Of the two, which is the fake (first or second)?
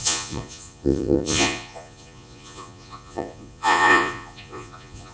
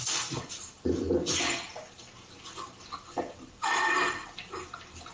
first